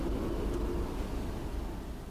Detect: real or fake real